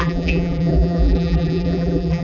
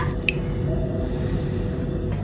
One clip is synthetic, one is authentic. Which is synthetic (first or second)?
first